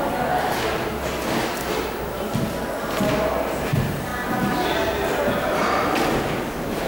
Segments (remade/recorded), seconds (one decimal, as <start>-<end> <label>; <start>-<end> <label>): 0.0-6.9 recorded